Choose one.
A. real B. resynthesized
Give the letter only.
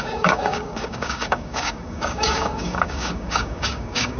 B